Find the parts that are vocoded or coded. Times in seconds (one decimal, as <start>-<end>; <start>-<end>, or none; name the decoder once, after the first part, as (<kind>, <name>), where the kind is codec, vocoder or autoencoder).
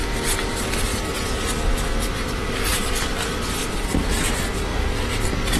0.0-1.0 (vocoder, BigVGAN v2); 2.7-4.0; 4.7-5.6